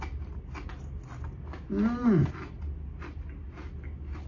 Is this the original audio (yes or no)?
yes